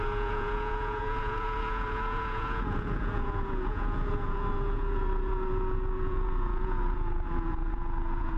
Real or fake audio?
fake